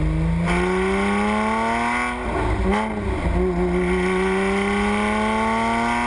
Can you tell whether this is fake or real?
real